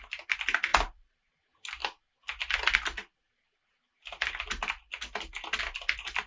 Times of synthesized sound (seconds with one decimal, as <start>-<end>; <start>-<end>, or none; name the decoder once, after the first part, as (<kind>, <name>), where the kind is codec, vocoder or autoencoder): 0.7-1.3 (vocoder, BigVGAN v2)